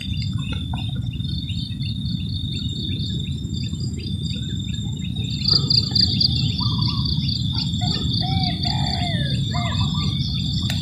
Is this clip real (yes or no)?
yes